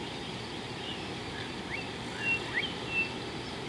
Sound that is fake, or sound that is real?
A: real